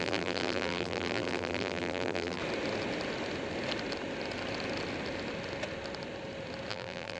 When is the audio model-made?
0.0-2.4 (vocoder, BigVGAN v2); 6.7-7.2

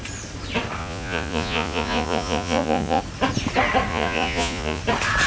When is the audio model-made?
0.8-3.0 (vocoder, Vocos); 3.9-4.8

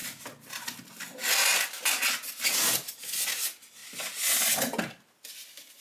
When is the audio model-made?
none